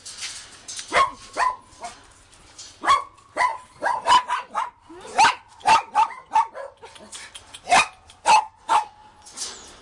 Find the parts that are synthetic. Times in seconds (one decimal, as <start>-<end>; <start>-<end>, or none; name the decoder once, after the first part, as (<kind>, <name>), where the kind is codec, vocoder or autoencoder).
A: 3.5-5.6 (vocoder, BigVGAN v2)